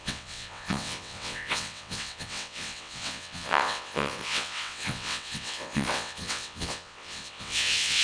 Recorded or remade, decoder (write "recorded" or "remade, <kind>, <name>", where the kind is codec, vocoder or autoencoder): remade, vocoder, WaveNeXt